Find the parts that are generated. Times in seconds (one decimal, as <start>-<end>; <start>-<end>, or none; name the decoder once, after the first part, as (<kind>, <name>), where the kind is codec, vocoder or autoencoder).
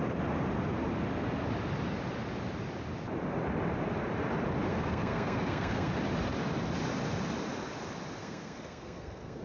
4.7-5.9 (codec, SNAC); 8.2-9.4